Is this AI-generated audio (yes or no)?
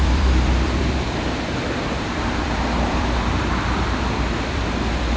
yes